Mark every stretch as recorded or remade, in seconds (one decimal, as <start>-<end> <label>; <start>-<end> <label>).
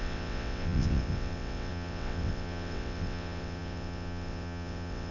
0.0-5.1 remade